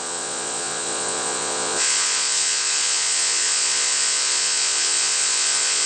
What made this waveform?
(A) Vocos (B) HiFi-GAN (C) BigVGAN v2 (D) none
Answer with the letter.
A